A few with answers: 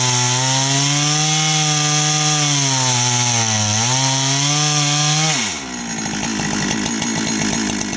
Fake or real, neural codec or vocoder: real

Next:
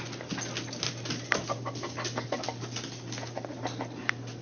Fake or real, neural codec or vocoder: real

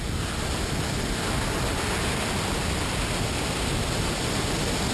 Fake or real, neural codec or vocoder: real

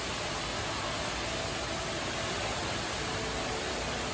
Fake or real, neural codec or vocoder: real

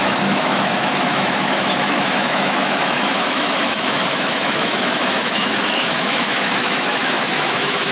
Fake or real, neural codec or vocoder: fake, autoencoder, DAC-VAE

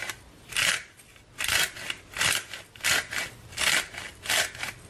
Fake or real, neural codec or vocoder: real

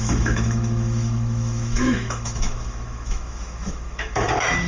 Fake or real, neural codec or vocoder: fake, autoencoder, DAC-VAE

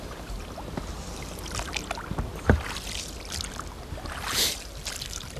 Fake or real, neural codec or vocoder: real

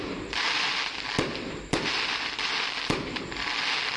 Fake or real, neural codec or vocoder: real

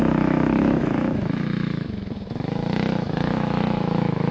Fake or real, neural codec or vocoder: fake, autoencoder, DAC-VAE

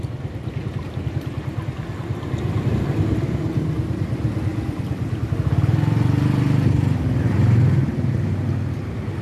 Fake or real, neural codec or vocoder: real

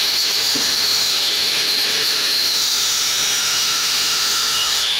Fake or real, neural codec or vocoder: fake, autoencoder, DAC-VAE